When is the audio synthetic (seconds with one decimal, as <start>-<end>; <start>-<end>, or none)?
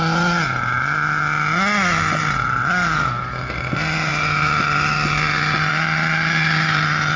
none